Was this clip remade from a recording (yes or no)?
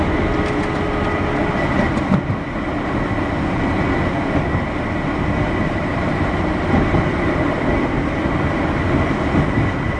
no